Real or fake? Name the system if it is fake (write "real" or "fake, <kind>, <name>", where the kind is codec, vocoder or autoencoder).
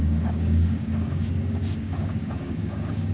fake, codec, DAC